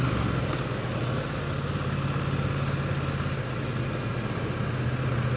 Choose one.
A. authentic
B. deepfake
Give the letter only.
A